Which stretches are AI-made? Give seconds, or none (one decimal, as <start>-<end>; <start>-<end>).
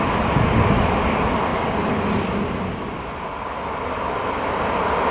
none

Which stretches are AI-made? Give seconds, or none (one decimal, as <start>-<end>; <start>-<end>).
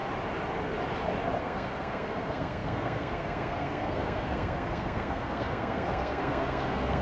1.4-7.0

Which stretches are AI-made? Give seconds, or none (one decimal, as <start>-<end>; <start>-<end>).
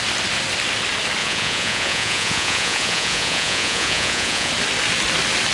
1.2-4.5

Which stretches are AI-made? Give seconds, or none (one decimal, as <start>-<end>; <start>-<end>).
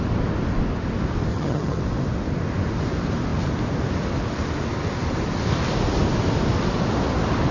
1.3-1.8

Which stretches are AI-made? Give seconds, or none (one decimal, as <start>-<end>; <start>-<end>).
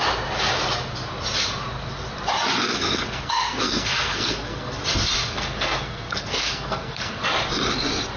2.6-4.8; 5.2-7.2